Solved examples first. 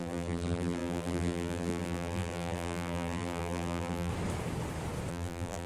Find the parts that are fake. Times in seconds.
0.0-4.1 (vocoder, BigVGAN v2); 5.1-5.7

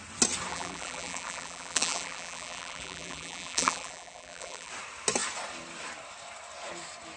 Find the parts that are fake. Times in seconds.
0.5-4.7 (vocoder, BigVGAN v2)